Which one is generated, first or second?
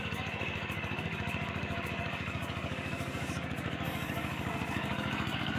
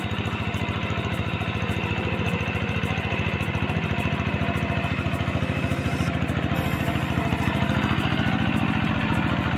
first